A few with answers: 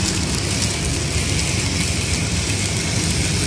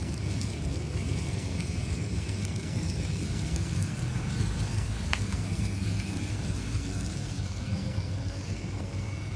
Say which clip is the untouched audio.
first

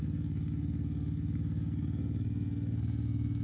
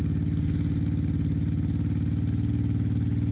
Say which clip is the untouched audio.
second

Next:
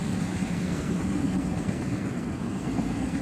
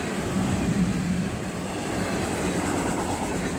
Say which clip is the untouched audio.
second